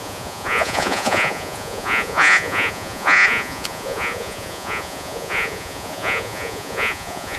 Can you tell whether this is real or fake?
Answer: fake